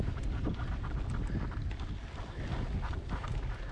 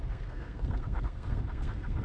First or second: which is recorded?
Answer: first